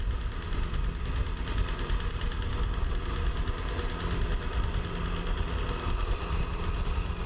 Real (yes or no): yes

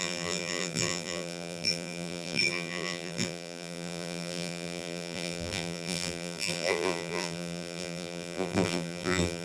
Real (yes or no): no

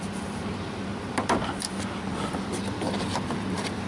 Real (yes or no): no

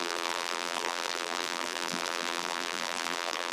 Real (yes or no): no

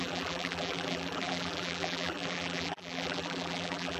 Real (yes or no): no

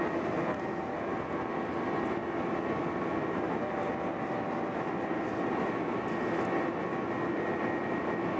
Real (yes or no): yes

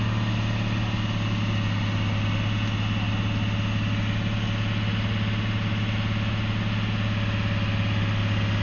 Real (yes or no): yes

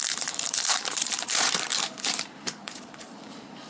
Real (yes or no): no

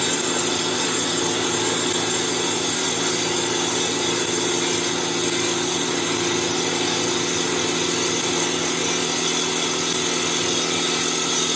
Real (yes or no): yes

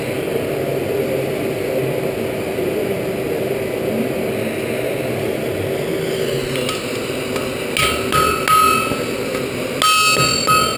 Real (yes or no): yes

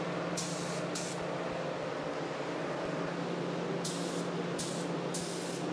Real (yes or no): yes